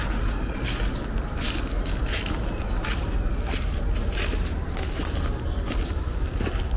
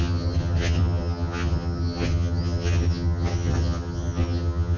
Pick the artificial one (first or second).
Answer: second